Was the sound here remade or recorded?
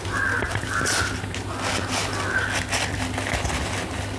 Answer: recorded